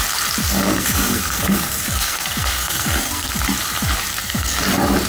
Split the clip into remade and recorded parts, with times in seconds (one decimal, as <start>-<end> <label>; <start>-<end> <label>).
0.0-0.4 recorded; 0.4-3.4 remade; 3.4-4.1 recorded; 4.1-4.6 remade; 4.6-5.1 recorded